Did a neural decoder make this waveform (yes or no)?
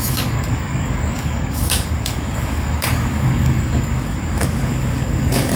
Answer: yes